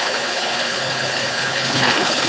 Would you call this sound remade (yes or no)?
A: yes